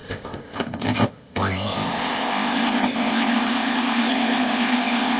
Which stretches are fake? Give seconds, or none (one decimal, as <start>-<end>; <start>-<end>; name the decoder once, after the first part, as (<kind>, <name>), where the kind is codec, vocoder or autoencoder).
0.0-5.2 (codec, ZipCodec)